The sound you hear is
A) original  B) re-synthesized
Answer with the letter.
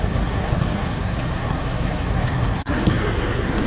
B